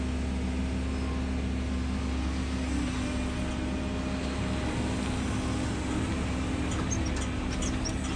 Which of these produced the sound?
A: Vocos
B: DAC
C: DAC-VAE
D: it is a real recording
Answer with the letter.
D